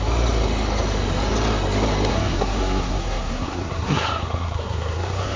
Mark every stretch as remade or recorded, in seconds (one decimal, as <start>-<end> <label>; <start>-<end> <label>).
0.0-2.1 recorded; 2.1-5.4 remade